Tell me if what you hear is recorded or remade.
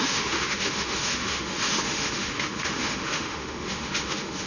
remade